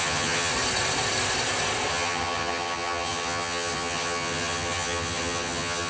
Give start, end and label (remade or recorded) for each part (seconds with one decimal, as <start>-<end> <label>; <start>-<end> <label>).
0.0-0.5 remade; 0.5-1.9 recorded; 1.9-5.9 remade